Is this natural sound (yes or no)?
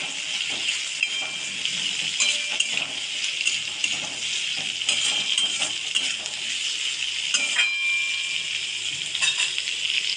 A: yes